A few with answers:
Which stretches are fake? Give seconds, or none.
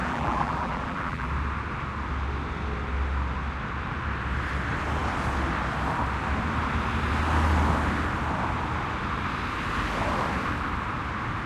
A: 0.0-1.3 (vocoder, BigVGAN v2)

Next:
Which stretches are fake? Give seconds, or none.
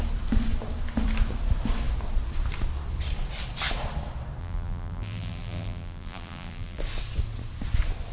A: 4.4-6.8 (vocoder, BigVGAN v2)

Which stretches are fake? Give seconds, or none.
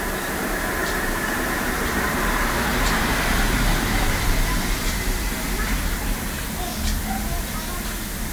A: 0.8-2.3 (vocoder, BigVGAN v2); 2.7-6.2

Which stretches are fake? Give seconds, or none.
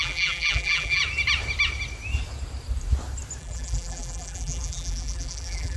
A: 0.0-1.0 (vocoder, BigVGAN v2); 3.4-5.8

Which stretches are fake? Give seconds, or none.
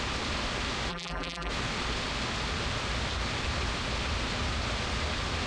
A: 0.9-1.5 (vocoder, BigVGAN v2)